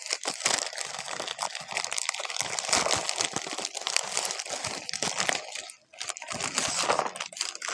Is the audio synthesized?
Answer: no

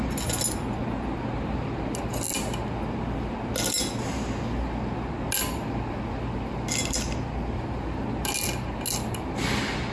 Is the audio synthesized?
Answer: no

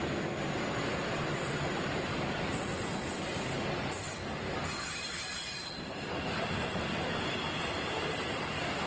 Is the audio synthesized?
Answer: no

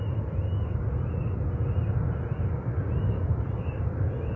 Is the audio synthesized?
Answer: no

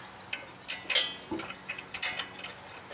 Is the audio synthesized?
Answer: no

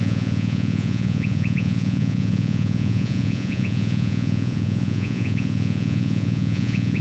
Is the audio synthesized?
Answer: yes